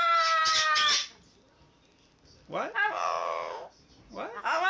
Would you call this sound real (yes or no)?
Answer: yes